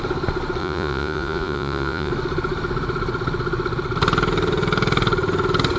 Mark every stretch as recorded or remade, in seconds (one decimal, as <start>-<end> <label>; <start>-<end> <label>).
0.0-0.6 recorded; 0.6-2.1 remade; 2.1-5.8 recorded